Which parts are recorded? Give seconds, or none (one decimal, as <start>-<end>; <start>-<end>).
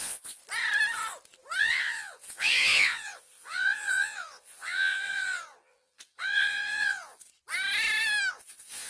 0.4-1.6; 7.3-8.3